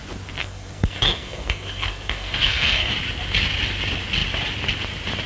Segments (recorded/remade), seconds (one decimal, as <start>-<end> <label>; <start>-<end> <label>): 0.0-0.4 recorded; 0.4-2.9 remade; 2.9-5.3 recorded

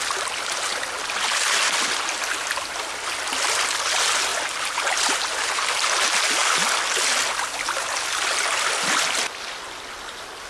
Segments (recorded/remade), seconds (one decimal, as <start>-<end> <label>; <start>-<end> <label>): 0.0-4.3 recorded; 4.3-5.7 remade; 5.7-10.5 recorded

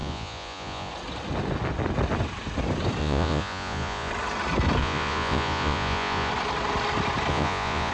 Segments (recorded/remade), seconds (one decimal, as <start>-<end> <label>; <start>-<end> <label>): 0.0-0.9 remade; 0.9-3.0 recorded; 3.0-4.1 remade; 4.1-4.8 recorded; 4.8-6.3 remade; 6.3-7.3 recorded; 7.3-7.9 remade

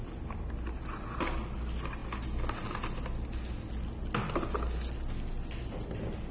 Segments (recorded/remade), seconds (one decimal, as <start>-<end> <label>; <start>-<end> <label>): 0.0-6.3 recorded